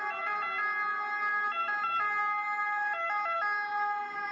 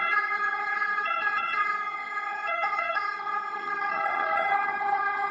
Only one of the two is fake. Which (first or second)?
second